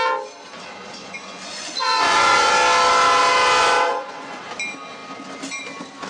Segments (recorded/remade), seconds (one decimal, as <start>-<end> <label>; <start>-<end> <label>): 0.0-1.0 recorded; 1.0-2.5 remade; 2.5-3.6 recorded; 3.6-4.4 remade; 4.4-6.1 recorded